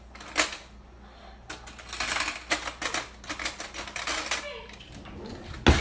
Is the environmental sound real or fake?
real